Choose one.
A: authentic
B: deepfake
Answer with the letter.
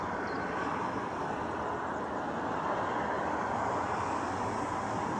A